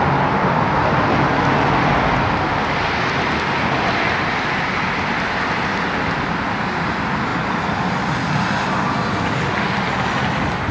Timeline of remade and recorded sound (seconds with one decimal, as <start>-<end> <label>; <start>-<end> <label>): 0.0-10.7 recorded